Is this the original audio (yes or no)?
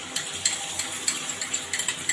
yes